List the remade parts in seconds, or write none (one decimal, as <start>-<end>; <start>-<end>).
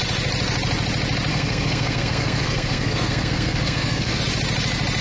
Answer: 1.3-4.2